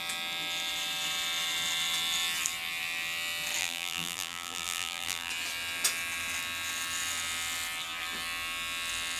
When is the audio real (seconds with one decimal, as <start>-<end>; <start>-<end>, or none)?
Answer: 0.0-3.6; 5.3-9.2